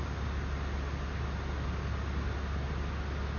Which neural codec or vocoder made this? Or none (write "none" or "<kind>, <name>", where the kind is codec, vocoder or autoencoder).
none